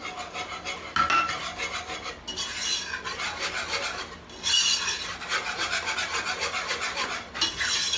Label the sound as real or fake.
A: real